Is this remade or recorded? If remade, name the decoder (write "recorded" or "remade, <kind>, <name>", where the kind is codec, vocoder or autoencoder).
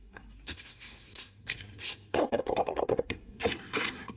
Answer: remade, codec, SNAC